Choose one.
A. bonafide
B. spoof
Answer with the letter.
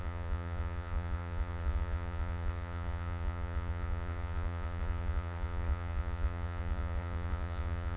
B